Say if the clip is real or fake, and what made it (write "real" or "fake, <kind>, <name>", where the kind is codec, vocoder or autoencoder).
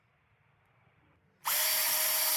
fake, vocoder, BigVGAN v2